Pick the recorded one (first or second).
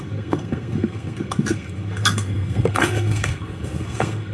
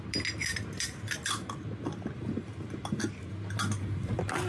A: second